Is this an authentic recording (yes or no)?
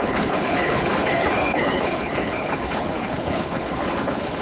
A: no